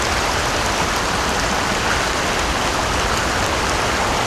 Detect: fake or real real